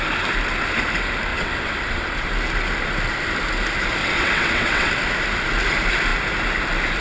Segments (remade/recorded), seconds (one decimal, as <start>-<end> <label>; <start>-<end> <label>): 0.0-1.3 recorded; 1.3-2.1 remade; 2.1-4.0 recorded; 4.0-4.9 remade; 4.9-7.0 recorded